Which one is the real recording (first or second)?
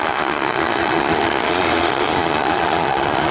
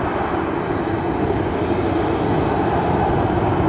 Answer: second